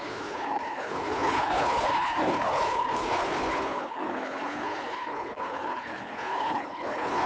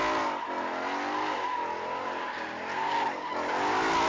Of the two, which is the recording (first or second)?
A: second